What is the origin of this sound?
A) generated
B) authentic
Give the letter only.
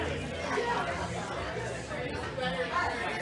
B